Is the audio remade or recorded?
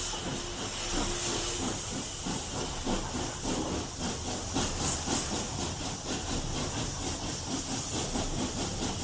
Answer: recorded